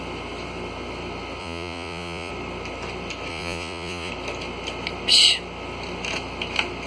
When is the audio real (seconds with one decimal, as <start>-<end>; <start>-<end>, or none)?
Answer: 0.0-1.4; 2.3-3.3; 4.1-6.9